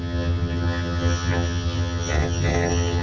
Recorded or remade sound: remade